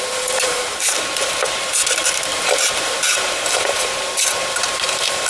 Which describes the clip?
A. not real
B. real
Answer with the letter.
A